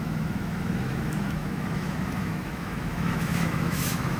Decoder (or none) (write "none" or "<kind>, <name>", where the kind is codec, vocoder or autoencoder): autoencoder, DAC-VAE